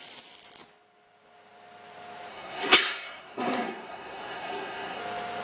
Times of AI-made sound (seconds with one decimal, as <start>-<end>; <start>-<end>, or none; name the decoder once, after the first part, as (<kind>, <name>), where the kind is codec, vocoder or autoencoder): 2.3-5.0 (codec, SNAC)